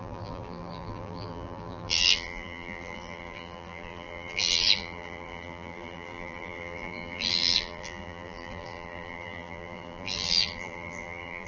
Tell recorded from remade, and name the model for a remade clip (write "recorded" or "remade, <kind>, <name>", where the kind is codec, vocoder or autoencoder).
remade, vocoder, BigVGAN v2